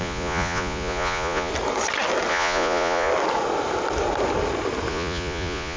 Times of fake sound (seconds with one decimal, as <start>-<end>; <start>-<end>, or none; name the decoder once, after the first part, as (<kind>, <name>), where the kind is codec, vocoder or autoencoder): 0.0-1.5 (vocoder, Vocos); 2.3-3.1; 4.9-5.8